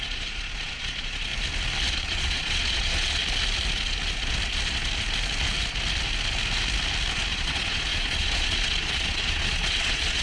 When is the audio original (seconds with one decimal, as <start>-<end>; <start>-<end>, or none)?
1.3-1.9; 3.2-7.3